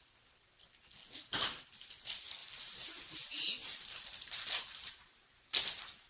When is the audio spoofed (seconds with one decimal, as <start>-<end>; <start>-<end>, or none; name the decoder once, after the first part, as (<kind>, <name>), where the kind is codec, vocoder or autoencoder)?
1.0-1.9 (vocoder, BigVGAN v2); 2.4-5.0